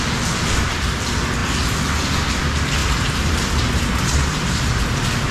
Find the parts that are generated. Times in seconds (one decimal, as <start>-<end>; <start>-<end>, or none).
2.8-4.6